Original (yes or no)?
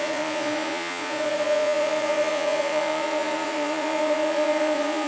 no